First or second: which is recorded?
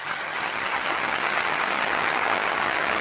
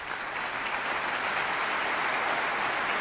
second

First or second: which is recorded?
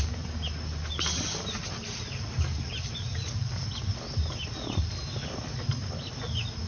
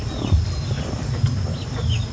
second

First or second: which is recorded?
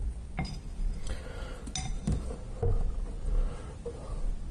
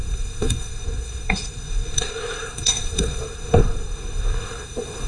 first